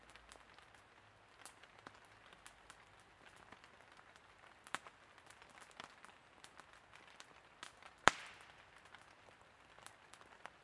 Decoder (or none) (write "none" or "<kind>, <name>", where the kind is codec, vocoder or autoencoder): none